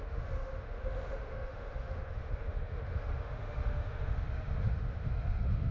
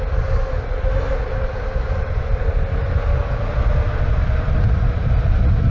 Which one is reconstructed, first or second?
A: first